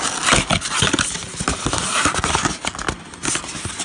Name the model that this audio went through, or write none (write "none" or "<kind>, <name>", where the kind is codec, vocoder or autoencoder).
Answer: none